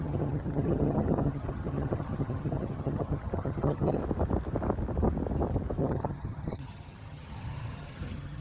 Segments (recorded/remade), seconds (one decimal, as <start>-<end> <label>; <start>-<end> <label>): 0.0-4.0 remade; 4.0-5.8 recorded; 5.8-8.4 remade